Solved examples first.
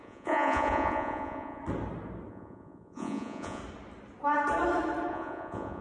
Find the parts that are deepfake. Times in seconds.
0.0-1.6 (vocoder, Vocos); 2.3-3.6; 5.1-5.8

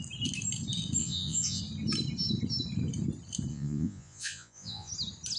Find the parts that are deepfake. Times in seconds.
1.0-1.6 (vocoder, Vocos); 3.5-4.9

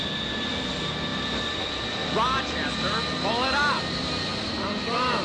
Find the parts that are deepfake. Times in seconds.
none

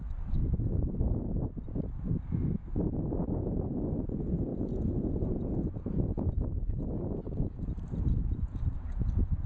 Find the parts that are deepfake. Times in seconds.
0.4-1.5 (vocoder, Vocos); 4.5-6.9; 8.2-9.5